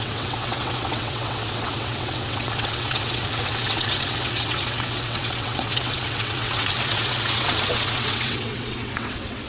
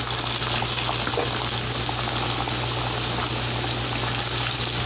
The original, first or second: second